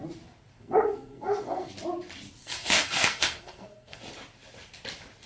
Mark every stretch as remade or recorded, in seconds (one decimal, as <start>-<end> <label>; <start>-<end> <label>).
0.0-0.5 recorded; 0.5-1.7 remade; 1.7-2.4 recorded; 2.4-4.0 remade; 4.0-5.3 recorded